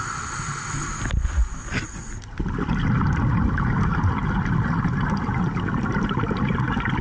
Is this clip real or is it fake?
real